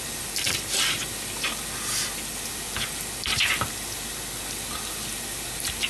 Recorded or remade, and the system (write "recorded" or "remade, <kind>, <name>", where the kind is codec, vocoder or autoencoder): recorded